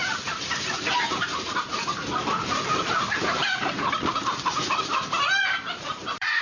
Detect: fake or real fake